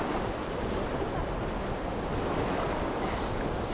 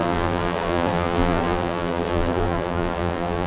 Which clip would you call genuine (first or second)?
first